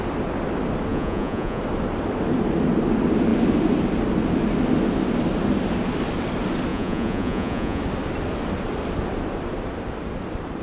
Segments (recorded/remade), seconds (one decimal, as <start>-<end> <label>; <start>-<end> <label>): 0.0-0.9 recorded; 0.9-1.6 remade; 1.6-6.7 recorded; 6.7-7.8 remade; 7.8-10.6 recorded